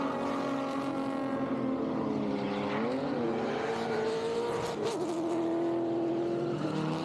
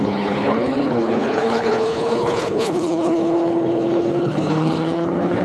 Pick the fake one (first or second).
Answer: second